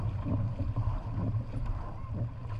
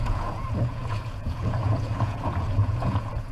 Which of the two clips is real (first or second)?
first